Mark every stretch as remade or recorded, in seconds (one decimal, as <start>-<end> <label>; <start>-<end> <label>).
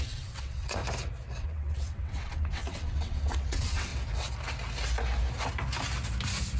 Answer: 0.0-0.8 remade; 0.8-1.4 recorded; 1.4-3.9 remade; 3.9-6.6 recorded